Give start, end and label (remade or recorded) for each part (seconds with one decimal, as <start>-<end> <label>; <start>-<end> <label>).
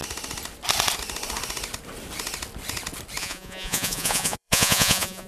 0.0-3.2 recorded; 3.2-5.3 remade